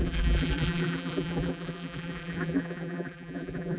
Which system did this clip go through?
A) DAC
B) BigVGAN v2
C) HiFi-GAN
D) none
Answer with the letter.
B